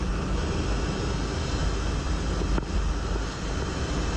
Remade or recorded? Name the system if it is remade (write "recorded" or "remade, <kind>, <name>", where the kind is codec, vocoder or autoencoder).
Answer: recorded